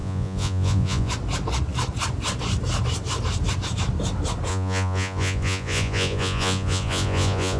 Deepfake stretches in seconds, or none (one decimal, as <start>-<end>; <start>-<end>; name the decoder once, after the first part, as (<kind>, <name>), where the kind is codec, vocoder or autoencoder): 0.0-1.1 (vocoder, Vocos); 4.5-7.6